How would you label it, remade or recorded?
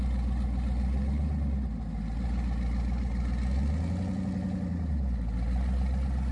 recorded